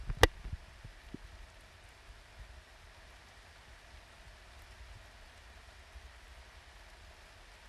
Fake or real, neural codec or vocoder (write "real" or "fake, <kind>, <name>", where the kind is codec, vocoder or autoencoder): real